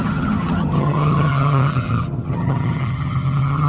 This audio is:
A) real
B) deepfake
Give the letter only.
B